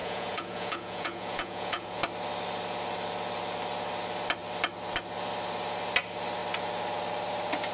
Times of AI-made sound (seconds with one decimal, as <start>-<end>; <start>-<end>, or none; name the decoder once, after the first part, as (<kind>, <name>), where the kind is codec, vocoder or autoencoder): 0.0-2.0 (vocoder, Vocos)